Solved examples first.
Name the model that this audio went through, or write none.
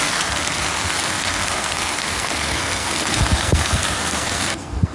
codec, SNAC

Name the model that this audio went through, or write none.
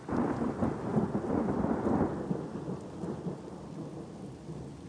none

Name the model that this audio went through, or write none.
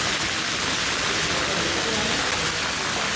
none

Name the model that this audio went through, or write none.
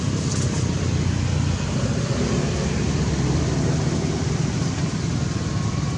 none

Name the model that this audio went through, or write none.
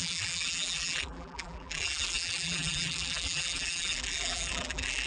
vocoder, BigVGAN v2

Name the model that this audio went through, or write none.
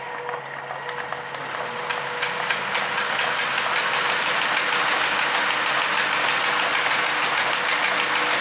none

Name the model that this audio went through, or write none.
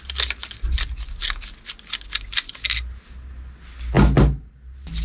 none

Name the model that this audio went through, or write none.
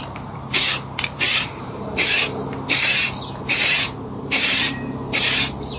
vocoder, BigVGAN v2